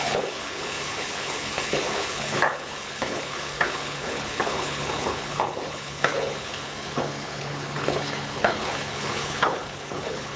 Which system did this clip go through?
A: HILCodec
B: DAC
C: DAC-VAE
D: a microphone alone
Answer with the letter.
A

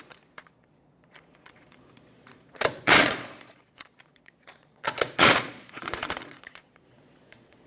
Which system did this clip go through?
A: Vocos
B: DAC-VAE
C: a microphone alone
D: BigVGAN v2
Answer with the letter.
A